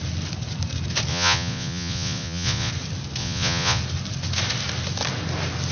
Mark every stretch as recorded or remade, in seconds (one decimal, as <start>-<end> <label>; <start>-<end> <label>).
0.0-1.1 recorded; 1.1-2.7 remade; 2.7-3.2 recorded; 3.2-3.8 remade; 3.8-5.7 recorded